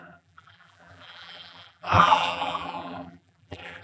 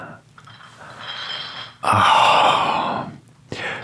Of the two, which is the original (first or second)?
second